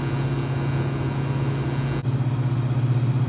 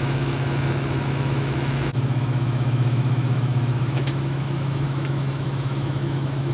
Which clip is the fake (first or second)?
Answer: second